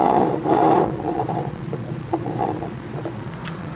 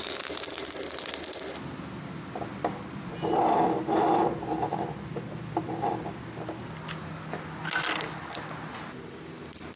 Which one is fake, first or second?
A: first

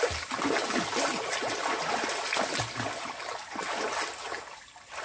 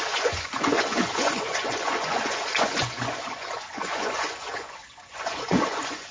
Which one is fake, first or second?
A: second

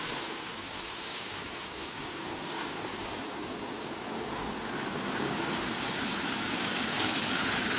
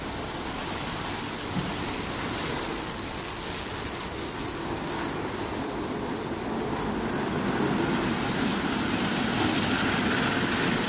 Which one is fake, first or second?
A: first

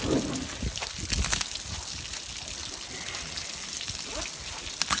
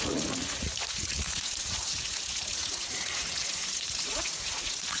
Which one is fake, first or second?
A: second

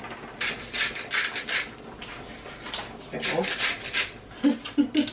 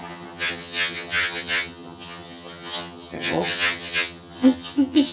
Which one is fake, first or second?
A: second